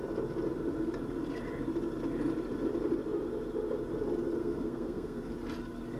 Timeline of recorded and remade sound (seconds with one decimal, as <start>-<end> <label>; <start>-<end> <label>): 0.0-4.4 recorded; 4.4-5.3 remade; 5.3-6.0 recorded